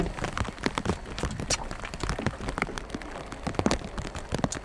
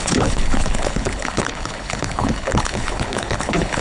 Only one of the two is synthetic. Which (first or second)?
second